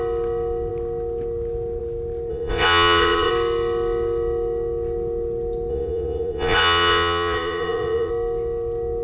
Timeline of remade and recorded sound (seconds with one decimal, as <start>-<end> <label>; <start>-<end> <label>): 0.0-2.3 recorded; 2.3-3.3 remade; 3.3-5.7 recorded; 5.7-8.1 remade; 8.1-9.0 recorded